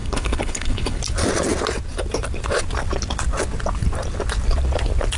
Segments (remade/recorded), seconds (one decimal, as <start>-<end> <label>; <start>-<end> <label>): 0.0-1.0 remade; 1.0-5.2 recorded